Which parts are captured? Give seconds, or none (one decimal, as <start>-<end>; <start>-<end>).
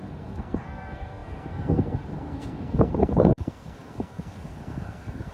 none